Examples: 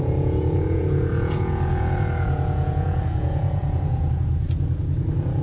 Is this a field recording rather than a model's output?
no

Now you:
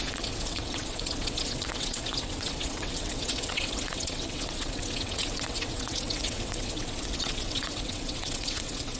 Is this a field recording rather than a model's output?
no